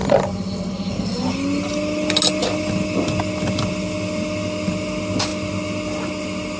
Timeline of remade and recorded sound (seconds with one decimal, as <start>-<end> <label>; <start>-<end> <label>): 0.0-6.6 recorded